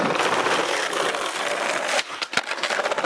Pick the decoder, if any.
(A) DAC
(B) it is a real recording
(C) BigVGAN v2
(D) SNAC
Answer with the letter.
C